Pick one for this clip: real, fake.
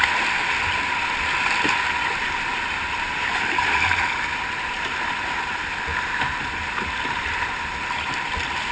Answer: real